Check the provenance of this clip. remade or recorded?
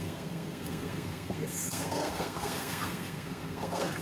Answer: remade